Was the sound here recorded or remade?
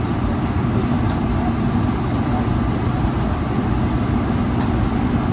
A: remade